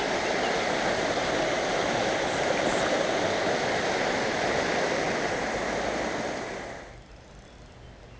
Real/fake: real